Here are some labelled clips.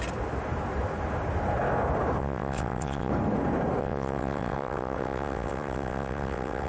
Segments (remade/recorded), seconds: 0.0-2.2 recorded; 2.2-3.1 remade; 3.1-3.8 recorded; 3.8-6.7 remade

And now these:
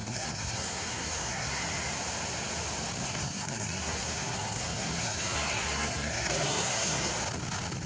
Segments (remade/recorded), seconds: 0.0-1.6 remade; 1.6-3.0 recorded; 3.0-7.1 remade; 7.1-7.9 recorded

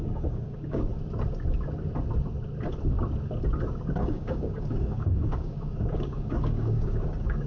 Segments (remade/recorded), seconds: 0.0-0.9 remade; 0.9-4.0 recorded; 4.0-7.5 remade

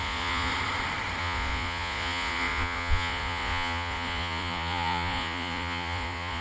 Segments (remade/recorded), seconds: 0.0-0.5 remade; 0.5-1.2 recorded; 1.2-6.4 remade

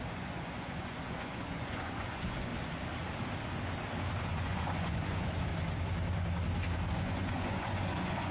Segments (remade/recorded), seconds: 0.0-2.5 remade; 2.5-4.2 recorded; 4.2-5.5 remade; 5.5-6.9 recorded; 6.9-8.3 remade

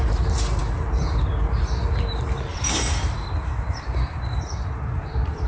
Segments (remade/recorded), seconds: 0.0-2.5 recorded; 2.5-5.5 remade

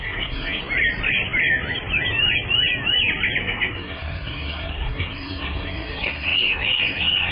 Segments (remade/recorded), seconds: 0.0-0.6 remade; 0.6-3.4 recorded; 3.4-7.3 remade